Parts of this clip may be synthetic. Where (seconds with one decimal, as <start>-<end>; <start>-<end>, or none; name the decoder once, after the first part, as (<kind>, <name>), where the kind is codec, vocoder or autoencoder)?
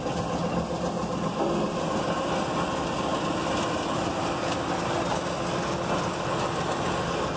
none